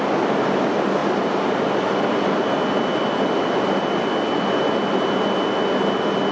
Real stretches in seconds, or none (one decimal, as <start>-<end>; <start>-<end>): 0.0-6.3